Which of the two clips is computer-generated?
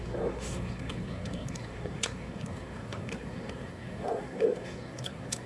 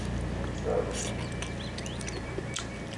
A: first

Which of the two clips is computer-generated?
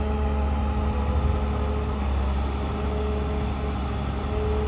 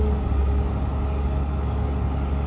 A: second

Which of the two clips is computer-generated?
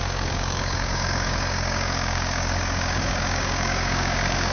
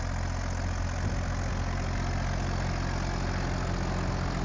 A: first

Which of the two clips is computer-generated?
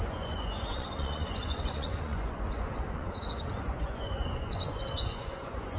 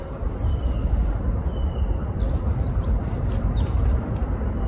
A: first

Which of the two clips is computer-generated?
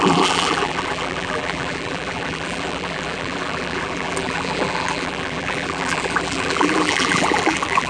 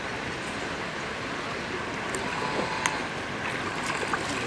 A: first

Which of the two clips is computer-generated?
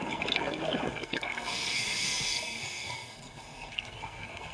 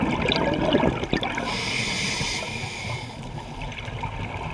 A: first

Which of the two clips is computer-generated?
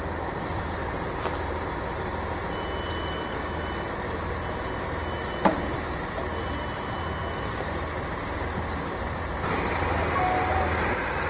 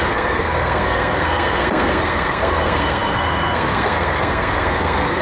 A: second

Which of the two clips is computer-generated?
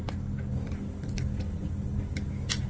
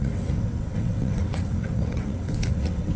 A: second